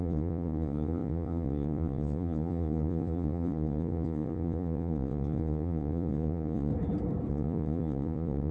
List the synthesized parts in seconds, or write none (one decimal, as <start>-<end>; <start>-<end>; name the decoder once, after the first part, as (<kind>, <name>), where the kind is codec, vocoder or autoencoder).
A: 0.0-6.7 (vocoder, Vocos); 7.3-8.5